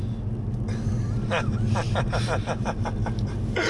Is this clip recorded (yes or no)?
yes